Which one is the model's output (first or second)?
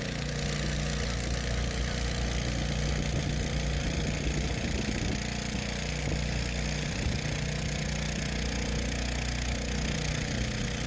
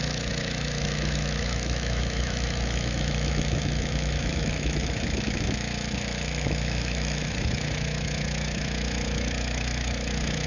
second